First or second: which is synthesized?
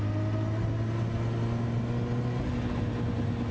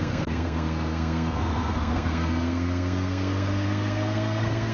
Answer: second